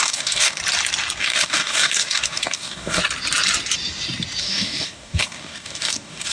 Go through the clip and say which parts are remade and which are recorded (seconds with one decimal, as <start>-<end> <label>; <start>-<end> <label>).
0.0-0.6 remade; 0.6-1.2 recorded; 1.2-3.0 remade; 3.0-4.4 recorded; 4.4-6.3 remade